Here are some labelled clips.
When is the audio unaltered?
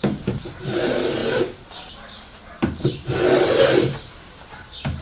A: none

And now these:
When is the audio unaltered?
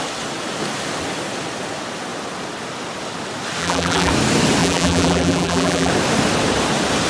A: 0.0-3.6; 4.1-4.6; 5.9-7.1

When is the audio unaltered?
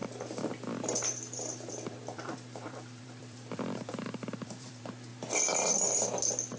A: 0.0-1.7; 5.1-6.6